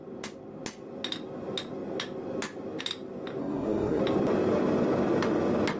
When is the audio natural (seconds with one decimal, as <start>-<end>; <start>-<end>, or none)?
0.0-3.4; 4.0-5.8